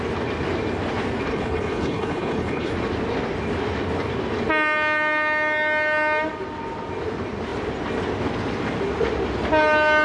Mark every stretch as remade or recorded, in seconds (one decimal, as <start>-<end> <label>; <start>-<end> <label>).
0.0-1.3 recorded; 1.3-2.7 remade; 2.7-10.0 recorded